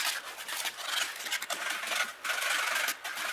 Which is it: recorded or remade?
remade